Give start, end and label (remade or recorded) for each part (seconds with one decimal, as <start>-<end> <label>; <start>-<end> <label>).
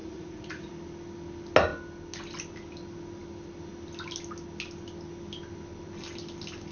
0.0-0.7 remade; 0.7-6.7 recorded